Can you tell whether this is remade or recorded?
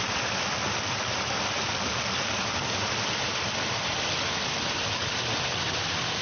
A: recorded